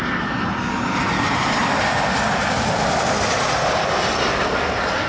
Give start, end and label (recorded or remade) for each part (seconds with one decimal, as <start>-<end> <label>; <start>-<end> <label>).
0.0-5.1 recorded